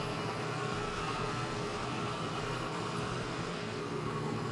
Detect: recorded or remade remade